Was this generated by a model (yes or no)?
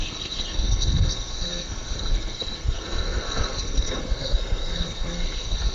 yes